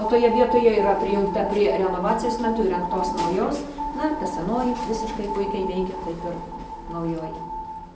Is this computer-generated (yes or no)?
no